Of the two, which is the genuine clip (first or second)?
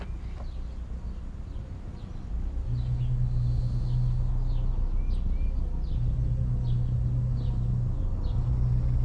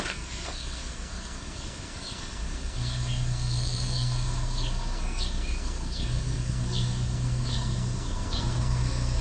first